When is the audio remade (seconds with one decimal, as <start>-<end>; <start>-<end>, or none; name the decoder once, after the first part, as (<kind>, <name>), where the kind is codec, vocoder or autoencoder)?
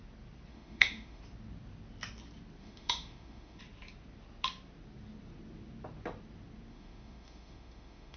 0.5-1.2 (autoencoder, DAC-VAE); 2.6-3.6; 6.7-8.2